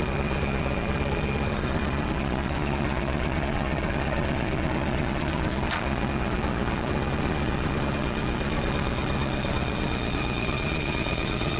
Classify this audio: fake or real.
fake